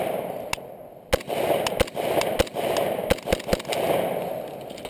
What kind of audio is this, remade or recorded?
recorded